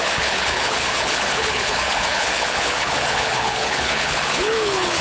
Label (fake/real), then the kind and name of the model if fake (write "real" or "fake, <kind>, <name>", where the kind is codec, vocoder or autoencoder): fake, codec, HILCodec